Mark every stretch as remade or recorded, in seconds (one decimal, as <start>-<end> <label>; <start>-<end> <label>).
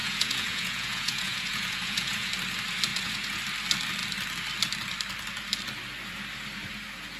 0.0-2.3 remade; 2.3-2.9 recorded; 2.9-3.4 remade; 3.4-7.2 recorded